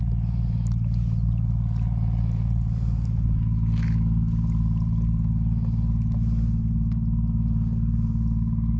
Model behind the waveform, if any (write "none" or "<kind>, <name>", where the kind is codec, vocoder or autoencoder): none